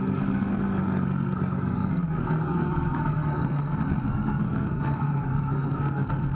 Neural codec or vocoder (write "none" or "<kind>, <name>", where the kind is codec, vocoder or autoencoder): codec, SNAC